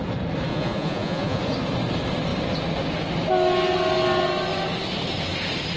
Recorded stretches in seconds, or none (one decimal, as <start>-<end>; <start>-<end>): 0.0-0.5; 1.4-5.8